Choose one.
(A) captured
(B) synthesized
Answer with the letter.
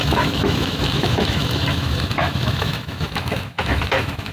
B